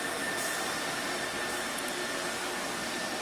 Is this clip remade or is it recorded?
recorded